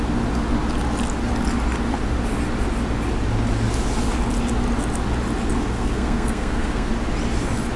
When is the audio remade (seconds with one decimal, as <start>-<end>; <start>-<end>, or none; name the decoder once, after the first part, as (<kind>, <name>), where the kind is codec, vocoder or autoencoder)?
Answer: 5.5-6.9 (codec, SNAC)